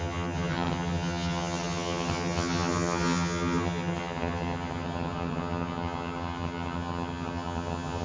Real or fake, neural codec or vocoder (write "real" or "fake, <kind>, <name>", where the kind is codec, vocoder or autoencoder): fake, vocoder, HiFi-GAN